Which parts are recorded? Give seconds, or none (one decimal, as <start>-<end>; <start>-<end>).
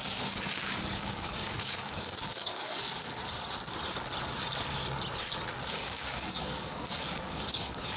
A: 2.9-5.7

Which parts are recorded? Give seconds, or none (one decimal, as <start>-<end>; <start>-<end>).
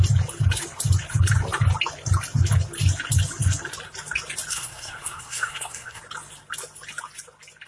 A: 0.0-4.5; 6.0-7.7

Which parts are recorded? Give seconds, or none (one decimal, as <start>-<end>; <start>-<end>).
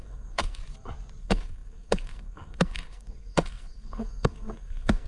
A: 0.6-1.2